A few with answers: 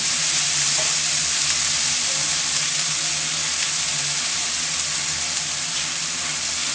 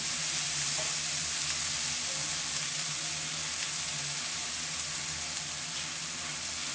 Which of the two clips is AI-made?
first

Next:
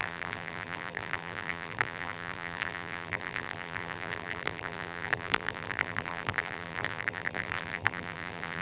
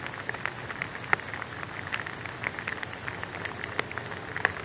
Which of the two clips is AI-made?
first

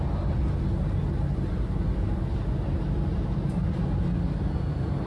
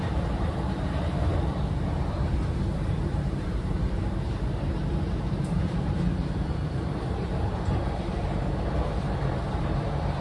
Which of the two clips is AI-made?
second